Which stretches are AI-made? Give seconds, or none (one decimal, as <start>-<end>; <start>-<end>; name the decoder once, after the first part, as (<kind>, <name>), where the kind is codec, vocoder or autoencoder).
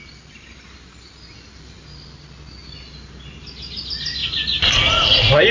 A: none